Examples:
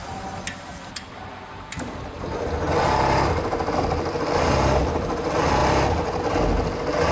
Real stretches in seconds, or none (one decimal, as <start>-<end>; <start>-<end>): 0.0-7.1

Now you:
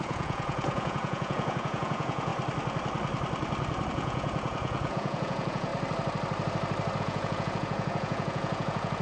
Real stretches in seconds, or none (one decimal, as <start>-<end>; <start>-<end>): 2.3-3.9; 5.7-7.0

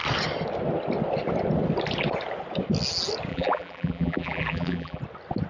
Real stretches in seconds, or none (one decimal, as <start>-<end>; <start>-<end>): 0.0-3.3; 5.0-5.5

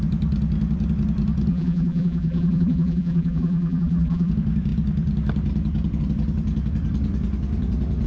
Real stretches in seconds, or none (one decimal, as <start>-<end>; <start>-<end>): 0.0-1.5; 4.3-8.1